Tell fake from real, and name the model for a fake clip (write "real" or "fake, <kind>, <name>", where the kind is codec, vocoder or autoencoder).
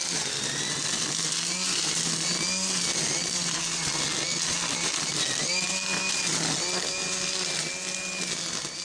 real